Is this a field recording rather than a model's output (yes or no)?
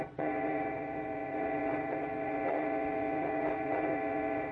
no